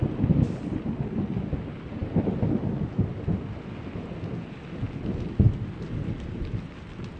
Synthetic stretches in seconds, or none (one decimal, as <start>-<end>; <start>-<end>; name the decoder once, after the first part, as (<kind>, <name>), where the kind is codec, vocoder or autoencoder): none